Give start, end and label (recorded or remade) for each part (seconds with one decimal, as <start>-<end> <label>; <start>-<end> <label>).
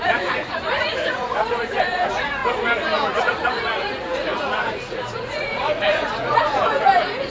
0.0-2.4 remade; 2.4-3.2 recorded; 3.2-7.3 remade